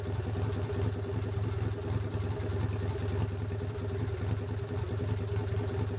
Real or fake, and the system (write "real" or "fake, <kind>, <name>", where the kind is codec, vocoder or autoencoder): real